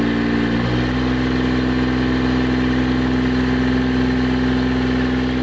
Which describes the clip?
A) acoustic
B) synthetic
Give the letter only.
A